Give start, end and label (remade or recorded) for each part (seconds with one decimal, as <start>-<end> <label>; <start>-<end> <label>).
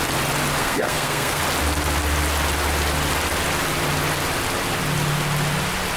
0.0-0.6 recorded; 0.6-1.4 remade; 1.4-6.0 recorded